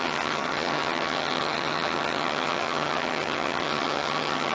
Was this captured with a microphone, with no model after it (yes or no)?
no